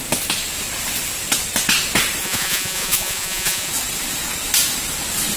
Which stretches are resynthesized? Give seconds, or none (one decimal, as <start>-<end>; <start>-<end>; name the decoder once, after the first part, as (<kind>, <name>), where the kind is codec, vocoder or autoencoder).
2.2-3.7 (vocoder, Vocos)